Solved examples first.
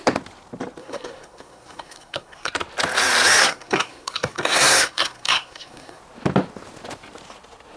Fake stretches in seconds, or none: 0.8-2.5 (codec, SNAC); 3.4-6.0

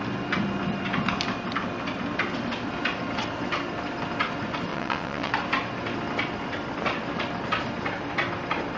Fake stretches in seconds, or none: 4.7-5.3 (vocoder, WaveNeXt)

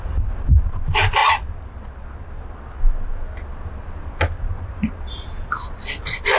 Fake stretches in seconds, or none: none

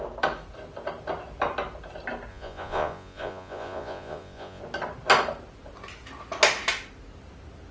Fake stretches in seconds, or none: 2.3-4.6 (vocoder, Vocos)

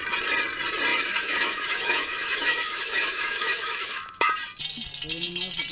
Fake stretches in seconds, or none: 0.9-4.3 (autoencoder, DAC-VAE)